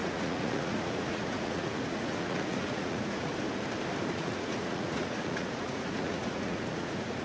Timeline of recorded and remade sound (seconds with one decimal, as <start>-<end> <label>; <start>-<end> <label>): 0.0-3.3 remade; 3.3-4.1 recorded; 4.1-7.2 remade